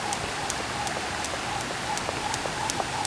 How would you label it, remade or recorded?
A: recorded